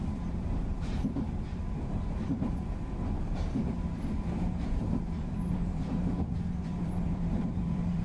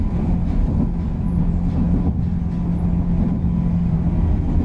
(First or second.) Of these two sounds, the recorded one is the second